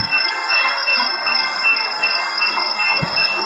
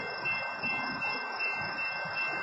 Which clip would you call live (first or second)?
second